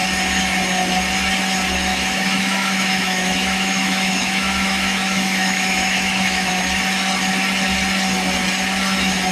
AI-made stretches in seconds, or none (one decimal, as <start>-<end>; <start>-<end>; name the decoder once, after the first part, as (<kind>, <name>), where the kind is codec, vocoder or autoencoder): 1.9-6.5 (autoencoder, DAC-VAE)